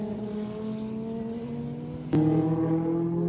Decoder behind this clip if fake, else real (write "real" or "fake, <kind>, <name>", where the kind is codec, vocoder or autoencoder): real